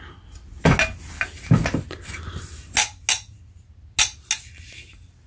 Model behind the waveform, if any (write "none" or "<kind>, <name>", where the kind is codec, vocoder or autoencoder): none